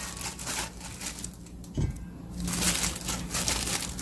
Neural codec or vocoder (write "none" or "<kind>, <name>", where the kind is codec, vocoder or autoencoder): none